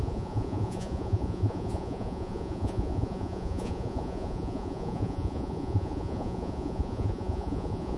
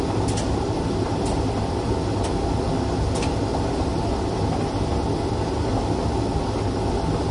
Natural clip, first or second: second